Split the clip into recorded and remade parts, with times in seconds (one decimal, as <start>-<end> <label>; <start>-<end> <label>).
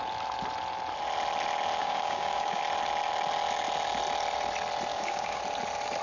0.0-1.8 recorded; 1.8-2.6 remade; 2.6-4.9 recorded; 4.9-5.4 remade; 5.4-6.0 recorded